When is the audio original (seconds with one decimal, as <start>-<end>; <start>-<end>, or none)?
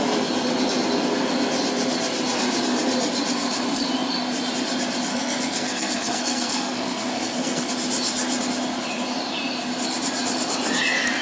0.0-5.1; 7.7-11.2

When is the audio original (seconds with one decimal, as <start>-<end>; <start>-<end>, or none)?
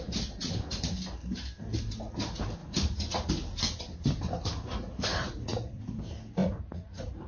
0.0-2.6; 3.3-5.1; 5.8-6.4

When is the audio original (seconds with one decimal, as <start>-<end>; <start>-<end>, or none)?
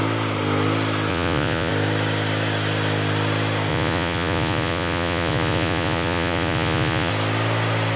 0.0-1.1; 1.7-3.7; 7.1-8.0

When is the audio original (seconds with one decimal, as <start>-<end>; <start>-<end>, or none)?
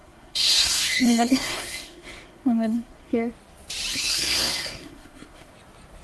3.3-3.9; 5.5-6.0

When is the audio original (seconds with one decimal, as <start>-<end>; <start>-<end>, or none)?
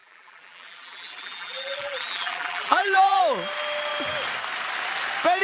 3.2-5.4